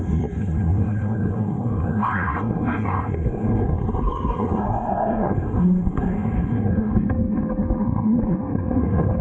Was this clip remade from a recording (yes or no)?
yes